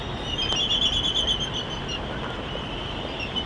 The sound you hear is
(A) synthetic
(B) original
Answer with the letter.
B